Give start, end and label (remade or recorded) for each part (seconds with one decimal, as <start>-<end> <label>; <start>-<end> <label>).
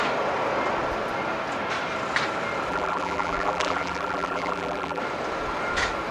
0.0-2.7 recorded; 2.7-5.0 remade; 5.0-6.1 recorded